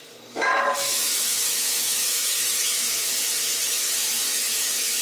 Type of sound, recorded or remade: remade